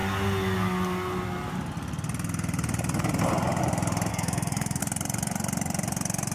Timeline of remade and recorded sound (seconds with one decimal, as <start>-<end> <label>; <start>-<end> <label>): 0.0-4.1 recorded; 4.1-4.8 remade; 4.8-6.3 recorded